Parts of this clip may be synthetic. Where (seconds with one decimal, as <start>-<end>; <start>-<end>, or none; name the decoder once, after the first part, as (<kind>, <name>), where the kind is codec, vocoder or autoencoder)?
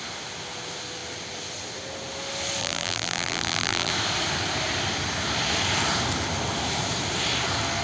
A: 2.6-3.9 (vocoder, BigVGAN v2)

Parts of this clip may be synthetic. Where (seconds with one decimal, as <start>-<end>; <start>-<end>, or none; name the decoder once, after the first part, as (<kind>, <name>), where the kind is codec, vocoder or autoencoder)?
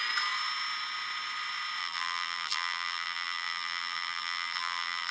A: 1.8-5.1 (vocoder, BigVGAN v2)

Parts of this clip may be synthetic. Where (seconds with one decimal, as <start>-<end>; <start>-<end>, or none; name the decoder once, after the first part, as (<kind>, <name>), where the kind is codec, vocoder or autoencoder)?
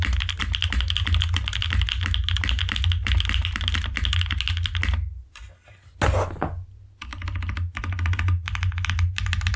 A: none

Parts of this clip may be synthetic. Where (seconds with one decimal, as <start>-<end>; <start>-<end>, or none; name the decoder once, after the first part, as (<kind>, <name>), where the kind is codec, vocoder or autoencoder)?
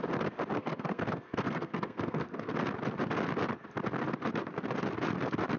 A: 0.6-2.5 (codec, SNAC)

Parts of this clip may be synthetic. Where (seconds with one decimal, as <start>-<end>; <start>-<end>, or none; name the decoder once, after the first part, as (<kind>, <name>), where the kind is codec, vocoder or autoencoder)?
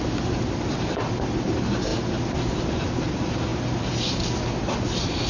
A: none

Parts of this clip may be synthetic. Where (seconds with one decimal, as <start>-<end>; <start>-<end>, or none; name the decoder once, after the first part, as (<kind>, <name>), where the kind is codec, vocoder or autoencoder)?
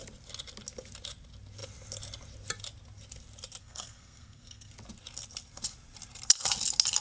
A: 3.6-4.7 (codec, SNAC)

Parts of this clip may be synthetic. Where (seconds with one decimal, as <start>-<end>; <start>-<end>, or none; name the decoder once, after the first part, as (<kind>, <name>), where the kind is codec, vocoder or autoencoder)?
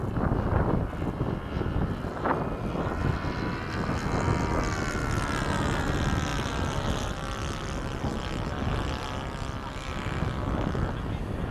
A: none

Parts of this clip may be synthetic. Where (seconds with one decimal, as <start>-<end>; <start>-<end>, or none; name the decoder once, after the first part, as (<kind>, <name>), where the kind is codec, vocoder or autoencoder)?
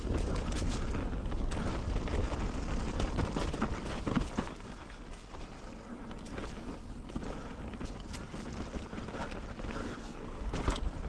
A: 9.8-10.5 (codec, SNAC)